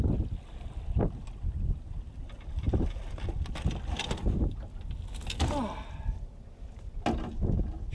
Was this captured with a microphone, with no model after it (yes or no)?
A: yes